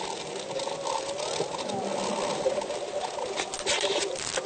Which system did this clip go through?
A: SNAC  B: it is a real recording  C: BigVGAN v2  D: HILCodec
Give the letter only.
B